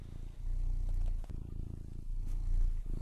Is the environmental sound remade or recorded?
recorded